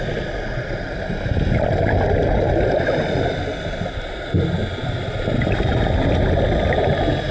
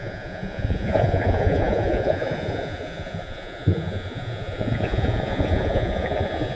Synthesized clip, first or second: second